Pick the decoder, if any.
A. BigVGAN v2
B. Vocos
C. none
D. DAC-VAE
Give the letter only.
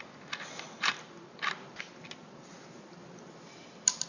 C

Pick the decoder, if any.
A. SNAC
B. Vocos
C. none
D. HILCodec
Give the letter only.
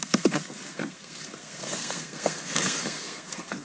A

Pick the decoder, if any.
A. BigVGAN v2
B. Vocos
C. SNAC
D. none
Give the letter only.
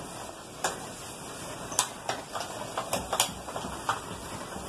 D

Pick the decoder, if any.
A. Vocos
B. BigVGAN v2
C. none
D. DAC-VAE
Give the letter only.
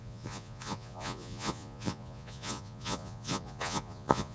A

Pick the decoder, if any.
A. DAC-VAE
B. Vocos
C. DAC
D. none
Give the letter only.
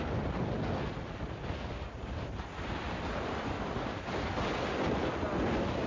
D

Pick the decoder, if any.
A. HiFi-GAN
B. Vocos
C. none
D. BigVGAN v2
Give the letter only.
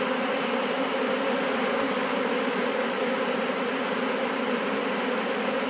C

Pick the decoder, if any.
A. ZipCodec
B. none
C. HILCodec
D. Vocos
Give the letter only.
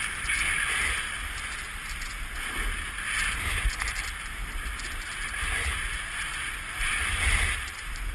B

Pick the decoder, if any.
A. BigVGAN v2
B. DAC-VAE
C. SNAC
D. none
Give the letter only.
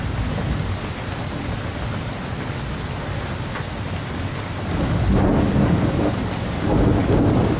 D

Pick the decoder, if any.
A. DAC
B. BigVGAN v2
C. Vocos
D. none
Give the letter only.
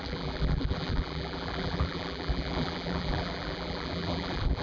B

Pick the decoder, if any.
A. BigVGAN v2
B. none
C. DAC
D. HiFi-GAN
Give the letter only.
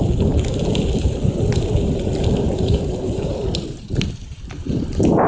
B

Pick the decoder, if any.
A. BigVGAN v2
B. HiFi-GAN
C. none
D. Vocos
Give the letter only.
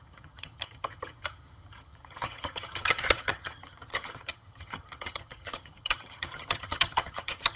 B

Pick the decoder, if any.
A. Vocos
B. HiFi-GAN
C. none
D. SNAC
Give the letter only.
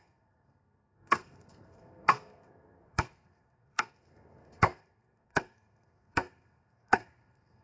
D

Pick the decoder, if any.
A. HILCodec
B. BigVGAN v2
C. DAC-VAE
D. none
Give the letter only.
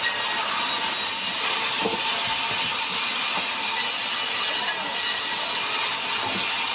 D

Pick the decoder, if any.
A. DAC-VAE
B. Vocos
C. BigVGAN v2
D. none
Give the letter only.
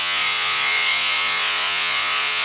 B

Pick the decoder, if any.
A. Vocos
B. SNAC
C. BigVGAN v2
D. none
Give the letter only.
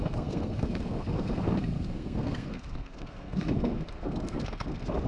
B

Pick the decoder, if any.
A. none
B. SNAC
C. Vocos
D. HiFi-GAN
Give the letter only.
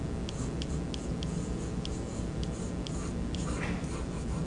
A